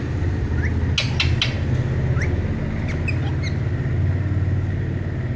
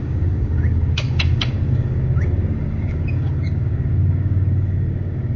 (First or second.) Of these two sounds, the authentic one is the first